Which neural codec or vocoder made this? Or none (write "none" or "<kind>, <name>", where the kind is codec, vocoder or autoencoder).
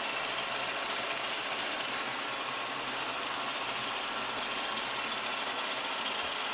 none